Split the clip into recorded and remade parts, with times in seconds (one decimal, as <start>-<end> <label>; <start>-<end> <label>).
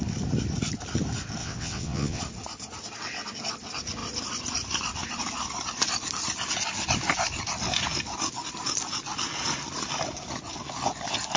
0.0-1.4 recorded; 1.4-2.2 remade; 2.2-11.4 recorded